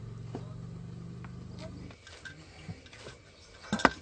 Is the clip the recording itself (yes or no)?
yes